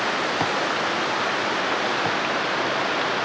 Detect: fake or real real